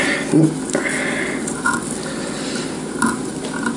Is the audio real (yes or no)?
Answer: yes